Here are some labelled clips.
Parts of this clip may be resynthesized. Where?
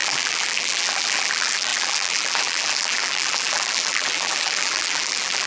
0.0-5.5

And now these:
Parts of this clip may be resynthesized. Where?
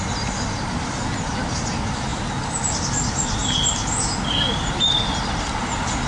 0.0-2.1; 2.7-3.4; 4.5-6.1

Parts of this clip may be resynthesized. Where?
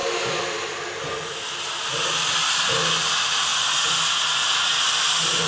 none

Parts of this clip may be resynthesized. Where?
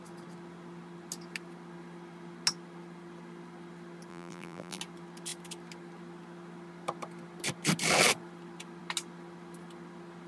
4.1-4.8